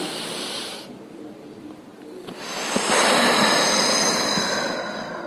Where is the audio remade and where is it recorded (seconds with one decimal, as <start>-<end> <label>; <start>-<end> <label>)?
0.0-5.3 recorded